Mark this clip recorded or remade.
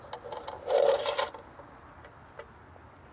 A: recorded